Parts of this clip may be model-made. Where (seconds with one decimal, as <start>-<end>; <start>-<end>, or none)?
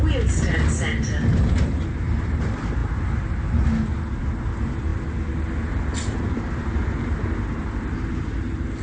none